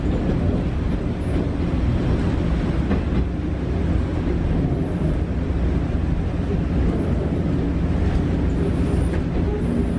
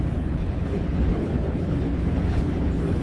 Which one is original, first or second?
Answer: first